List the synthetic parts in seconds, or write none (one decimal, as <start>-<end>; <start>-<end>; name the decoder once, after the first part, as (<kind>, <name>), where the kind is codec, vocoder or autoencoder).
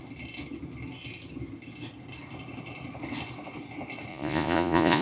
4.1-5.0 (vocoder, Vocos)